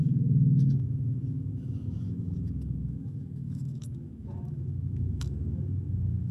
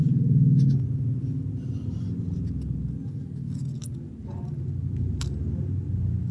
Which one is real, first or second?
second